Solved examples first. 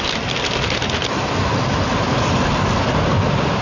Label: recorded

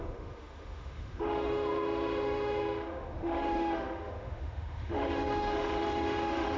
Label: remade